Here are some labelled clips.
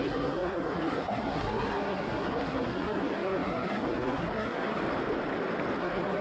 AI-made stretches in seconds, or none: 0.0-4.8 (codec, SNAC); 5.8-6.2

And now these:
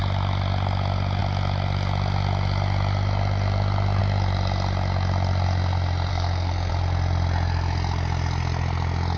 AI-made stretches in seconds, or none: 6.1-6.7 (codec, SNAC)

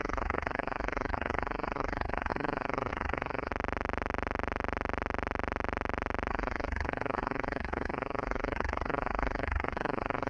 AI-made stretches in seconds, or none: 0.0-3.5 (codec, SNAC); 6.3-10.3

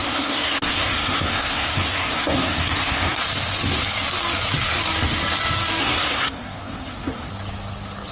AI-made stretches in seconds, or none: 0.0-3.2 (codec, SNAC); 5.8-7.3

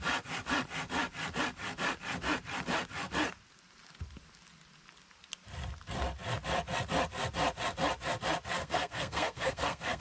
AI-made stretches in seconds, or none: 8.6-10.0 (codec, SNAC)

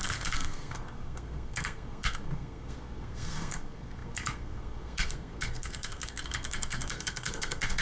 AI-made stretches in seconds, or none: 0.0-7.8 (codec, SNAC)

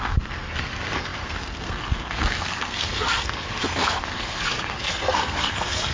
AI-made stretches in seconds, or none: 0.0-5.9 (codec, SNAC)

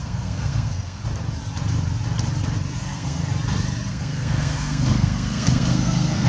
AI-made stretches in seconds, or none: 0.0-1.0 (codec, SNAC); 2.8-3.2; 3.9-6.3